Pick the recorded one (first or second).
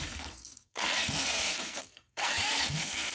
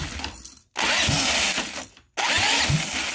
second